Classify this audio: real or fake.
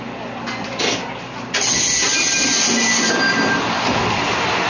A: real